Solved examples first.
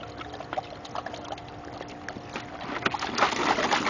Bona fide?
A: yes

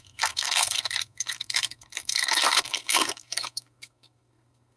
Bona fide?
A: no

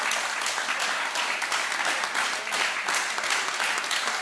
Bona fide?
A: yes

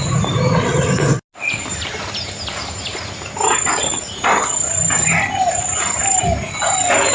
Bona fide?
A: yes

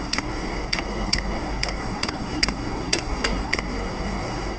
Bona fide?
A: no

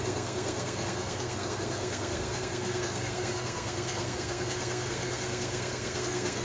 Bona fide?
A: no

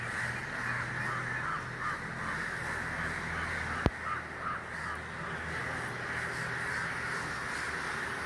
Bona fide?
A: yes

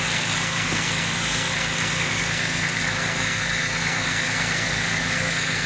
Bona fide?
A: no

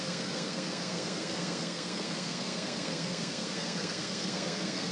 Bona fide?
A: no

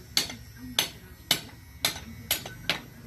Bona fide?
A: yes